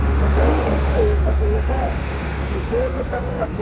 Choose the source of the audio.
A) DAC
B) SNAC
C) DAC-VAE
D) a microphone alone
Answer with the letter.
C